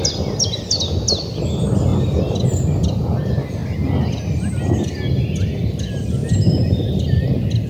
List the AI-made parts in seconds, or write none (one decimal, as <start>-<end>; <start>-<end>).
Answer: 1.9-2.6; 6.2-7.3